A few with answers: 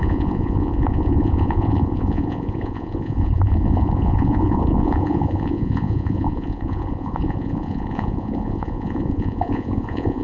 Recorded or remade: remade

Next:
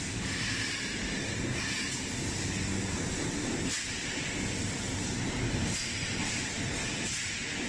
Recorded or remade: recorded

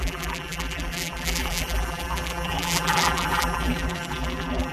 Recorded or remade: remade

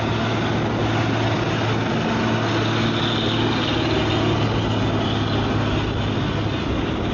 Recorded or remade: recorded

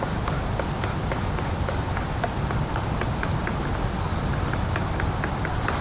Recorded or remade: recorded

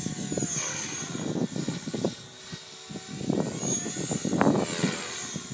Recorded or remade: recorded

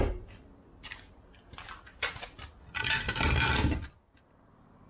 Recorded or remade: recorded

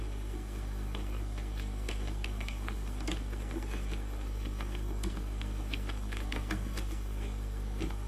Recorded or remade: remade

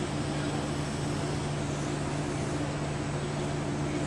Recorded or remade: recorded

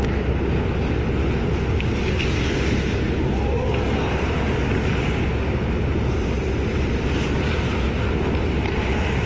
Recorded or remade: recorded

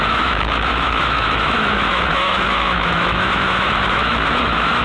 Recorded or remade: remade